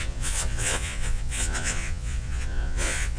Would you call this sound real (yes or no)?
no